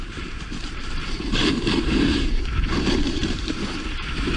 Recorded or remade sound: remade